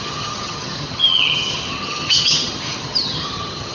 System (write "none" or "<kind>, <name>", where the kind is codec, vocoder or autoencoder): vocoder, HiFi-GAN